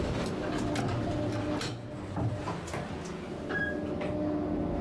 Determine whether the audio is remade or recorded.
recorded